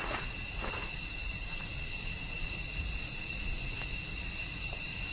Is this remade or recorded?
remade